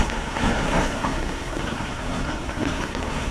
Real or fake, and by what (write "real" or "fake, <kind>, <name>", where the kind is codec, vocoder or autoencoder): fake, codec, SNAC